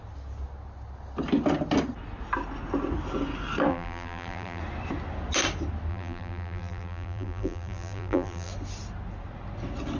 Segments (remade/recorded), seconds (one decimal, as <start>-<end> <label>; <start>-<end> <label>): 0.0-3.7 recorded; 3.7-4.6 remade; 4.6-5.9 recorded; 5.9-8.5 remade; 8.5-10.0 recorded